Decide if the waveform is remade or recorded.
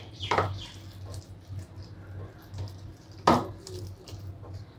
recorded